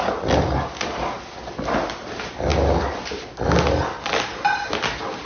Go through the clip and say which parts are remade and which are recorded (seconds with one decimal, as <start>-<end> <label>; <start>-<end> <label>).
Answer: 0.0-5.3 recorded